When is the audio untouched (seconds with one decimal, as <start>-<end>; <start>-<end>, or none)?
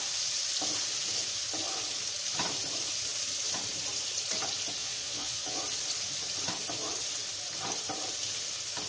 0.0-4.8; 5.6-8.9